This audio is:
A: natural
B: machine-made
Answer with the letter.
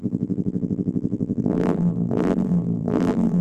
B